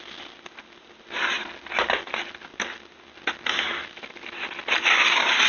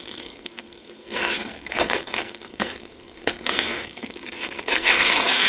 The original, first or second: first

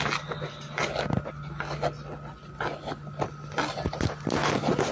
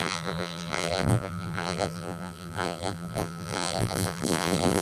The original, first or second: first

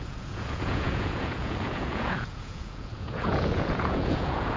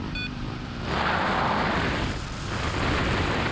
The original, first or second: second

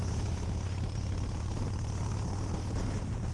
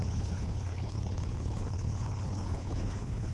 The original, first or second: first